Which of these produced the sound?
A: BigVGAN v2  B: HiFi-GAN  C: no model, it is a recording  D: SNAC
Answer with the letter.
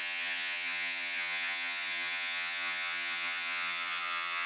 B